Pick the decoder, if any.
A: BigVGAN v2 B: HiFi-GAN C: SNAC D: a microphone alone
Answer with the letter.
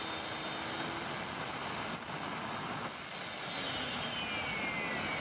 D